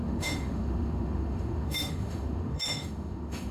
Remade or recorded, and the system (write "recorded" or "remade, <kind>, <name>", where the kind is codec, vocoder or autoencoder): remade, autoencoder, DAC-VAE